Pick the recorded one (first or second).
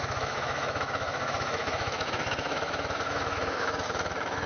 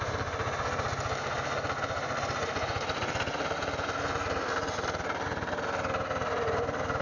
second